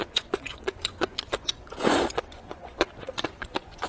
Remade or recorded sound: remade